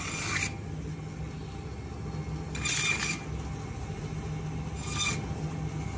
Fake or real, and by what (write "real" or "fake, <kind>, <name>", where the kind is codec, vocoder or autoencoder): real